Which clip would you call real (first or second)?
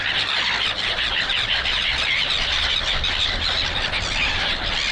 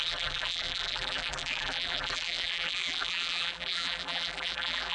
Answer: first